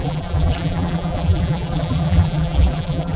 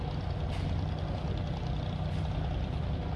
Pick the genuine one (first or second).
second